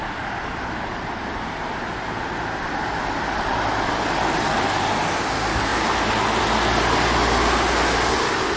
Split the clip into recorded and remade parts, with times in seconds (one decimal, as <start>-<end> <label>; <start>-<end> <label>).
0.0-5.7 recorded; 5.7-6.4 remade; 6.4-8.6 recorded

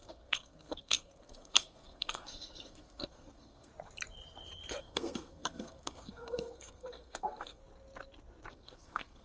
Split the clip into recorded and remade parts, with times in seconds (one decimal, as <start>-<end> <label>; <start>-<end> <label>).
0.0-3.7 remade; 3.7-4.8 recorded; 4.8-7.6 remade; 7.6-8.5 recorded; 8.5-9.2 remade

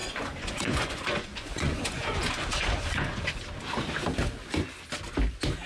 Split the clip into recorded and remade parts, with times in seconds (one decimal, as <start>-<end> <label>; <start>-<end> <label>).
0.0-3.4 remade; 3.4-5.7 recorded

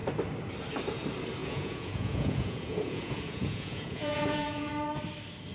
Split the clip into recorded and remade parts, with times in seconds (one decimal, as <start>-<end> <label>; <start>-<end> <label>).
0.0-1.4 recorded; 1.4-4.7 remade; 4.7-5.5 recorded

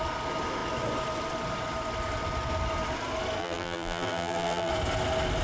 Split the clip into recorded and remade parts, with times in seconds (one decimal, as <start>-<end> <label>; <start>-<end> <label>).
0.0-3.4 recorded; 3.4-4.7 remade; 4.7-5.4 recorded

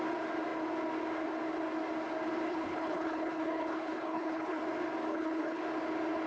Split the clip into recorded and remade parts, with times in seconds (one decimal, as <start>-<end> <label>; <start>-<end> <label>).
0.0-2.5 recorded; 2.5-4.6 remade; 4.6-5.1 recorded; 5.1-5.6 remade; 5.6-6.3 recorded